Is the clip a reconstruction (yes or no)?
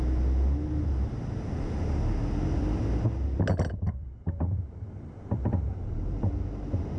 no